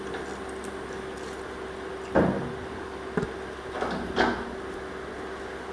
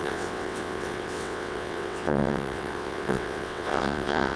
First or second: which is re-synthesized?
second